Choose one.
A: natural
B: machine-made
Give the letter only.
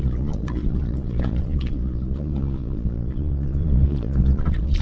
B